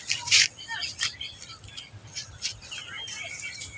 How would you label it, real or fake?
real